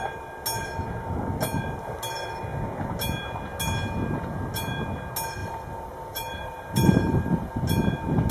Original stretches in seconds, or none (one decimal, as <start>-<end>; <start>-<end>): 0.0-5.4; 7.5-8.3